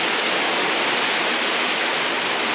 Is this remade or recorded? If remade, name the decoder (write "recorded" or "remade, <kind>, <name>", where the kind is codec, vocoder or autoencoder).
recorded